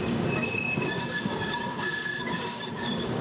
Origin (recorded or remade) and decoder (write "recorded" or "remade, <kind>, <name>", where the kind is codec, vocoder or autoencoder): remade, codec, DAC